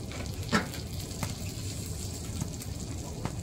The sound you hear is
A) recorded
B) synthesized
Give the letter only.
A